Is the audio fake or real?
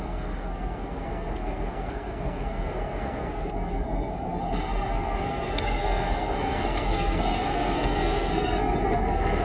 fake